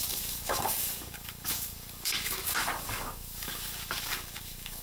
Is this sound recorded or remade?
remade